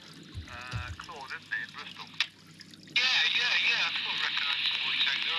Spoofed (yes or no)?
no